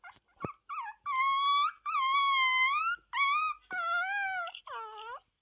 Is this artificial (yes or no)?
no